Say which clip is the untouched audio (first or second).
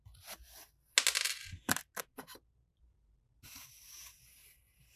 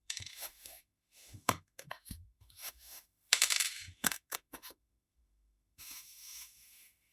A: first